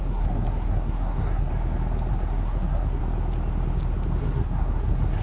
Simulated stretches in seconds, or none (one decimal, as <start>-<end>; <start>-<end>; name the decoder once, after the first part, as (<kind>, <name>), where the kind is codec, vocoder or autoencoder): 0.0-1.5 (codec, SNAC); 2.1-3.0; 4.2-5.2